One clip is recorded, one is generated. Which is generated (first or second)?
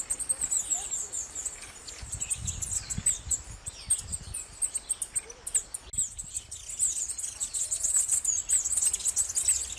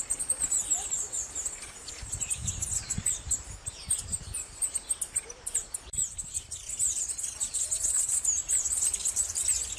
second